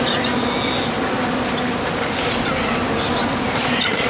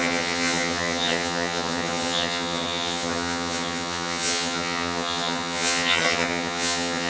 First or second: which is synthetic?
second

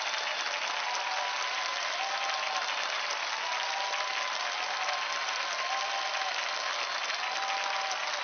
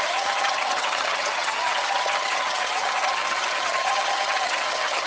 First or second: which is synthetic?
second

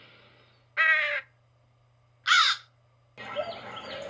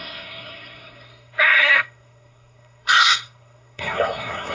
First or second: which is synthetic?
second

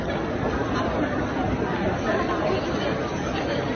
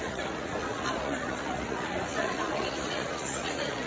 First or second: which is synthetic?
second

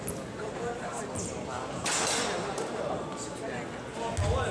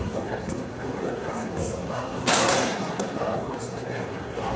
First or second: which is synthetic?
second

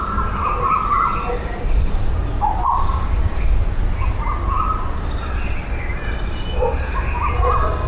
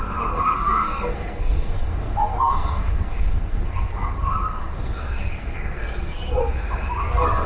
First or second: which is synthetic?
second